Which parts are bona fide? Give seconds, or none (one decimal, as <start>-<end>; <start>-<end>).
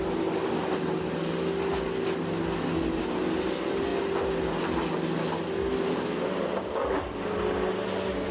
0.0-8.3